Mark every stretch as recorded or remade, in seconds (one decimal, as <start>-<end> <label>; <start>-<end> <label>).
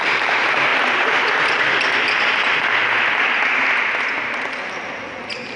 0.0-0.7 remade; 0.7-4.1 recorded; 4.1-5.6 remade